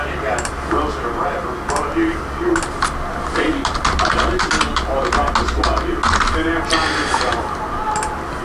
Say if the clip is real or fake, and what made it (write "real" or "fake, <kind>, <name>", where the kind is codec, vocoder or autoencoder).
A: real